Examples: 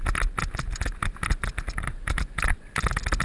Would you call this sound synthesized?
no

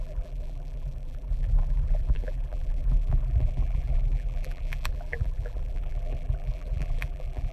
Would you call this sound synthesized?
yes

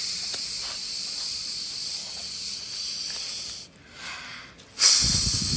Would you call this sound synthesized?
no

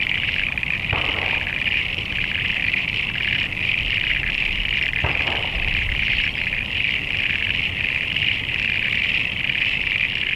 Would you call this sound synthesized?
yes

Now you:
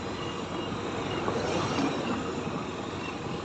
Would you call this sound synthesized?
no